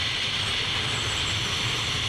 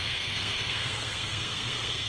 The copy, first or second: second